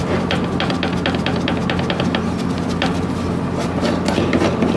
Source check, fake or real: real